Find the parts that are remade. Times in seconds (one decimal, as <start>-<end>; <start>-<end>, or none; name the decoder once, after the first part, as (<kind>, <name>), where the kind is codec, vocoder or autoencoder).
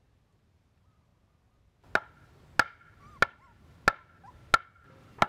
none